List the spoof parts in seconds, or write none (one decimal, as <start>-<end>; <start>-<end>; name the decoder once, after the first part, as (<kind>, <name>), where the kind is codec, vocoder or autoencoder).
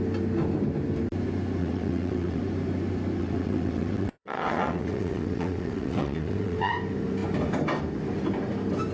1.6-2.4 (vocoder, WaveNeXt); 3.2-6.7